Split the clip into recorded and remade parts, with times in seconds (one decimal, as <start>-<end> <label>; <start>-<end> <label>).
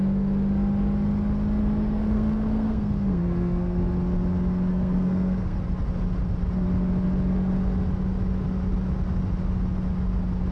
0.0-1.6 recorded; 1.6-3.8 remade; 3.8-4.7 recorded; 4.7-5.6 remade; 5.6-10.5 recorded